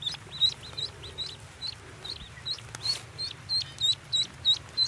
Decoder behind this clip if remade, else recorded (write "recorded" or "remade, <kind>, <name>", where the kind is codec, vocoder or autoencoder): recorded